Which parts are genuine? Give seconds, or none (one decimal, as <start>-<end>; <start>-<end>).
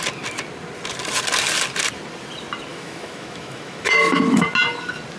0.0-2.7; 4.4-5.2